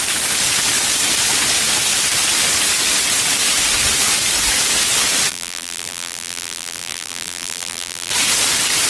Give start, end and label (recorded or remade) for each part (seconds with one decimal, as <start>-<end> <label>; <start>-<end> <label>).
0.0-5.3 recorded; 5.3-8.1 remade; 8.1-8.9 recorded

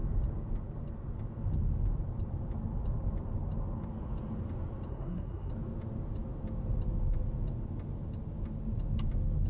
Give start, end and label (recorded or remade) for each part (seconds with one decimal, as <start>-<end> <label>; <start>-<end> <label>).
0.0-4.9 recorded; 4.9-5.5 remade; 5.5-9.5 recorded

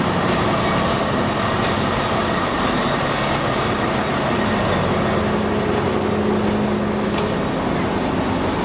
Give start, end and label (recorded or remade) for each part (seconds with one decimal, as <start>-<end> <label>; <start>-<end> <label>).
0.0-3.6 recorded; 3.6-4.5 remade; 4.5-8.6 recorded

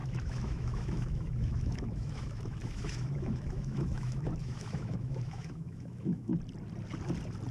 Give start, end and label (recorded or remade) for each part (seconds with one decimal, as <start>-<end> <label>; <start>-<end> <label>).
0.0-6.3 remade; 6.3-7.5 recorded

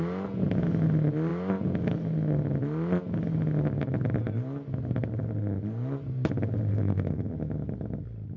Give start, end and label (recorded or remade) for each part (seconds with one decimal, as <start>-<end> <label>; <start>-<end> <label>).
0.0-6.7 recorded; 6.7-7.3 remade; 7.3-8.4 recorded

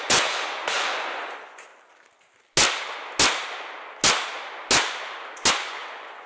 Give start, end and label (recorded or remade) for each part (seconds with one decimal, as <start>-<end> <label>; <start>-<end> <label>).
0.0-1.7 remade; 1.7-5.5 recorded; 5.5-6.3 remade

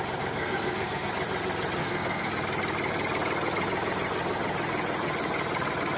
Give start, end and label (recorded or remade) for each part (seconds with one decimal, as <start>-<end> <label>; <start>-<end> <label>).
0.0-0.4 recorded; 0.4-1.1 remade; 1.1-1.8 recorded; 1.8-2.3 remade; 2.3-6.0 recorded